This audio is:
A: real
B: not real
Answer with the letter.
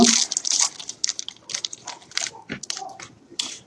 A